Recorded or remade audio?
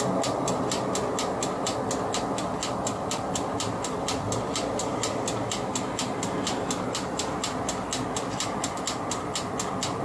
recorded